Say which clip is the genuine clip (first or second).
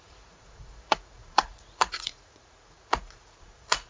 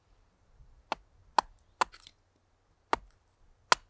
second